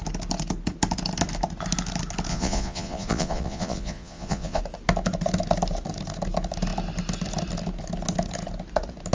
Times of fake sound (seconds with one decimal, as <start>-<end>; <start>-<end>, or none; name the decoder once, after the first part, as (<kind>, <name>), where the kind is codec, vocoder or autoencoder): 2.3-4.6 (vocoder, Vocos)